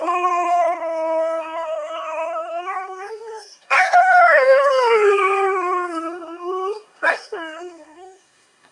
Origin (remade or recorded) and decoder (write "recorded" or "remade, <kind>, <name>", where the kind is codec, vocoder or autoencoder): remade, codec, SNAC